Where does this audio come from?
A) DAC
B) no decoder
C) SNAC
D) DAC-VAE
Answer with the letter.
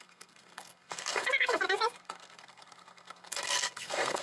C